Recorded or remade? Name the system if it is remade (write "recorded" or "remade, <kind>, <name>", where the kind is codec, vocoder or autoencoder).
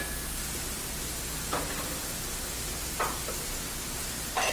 recorded